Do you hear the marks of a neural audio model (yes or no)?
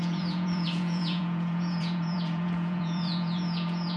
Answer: yes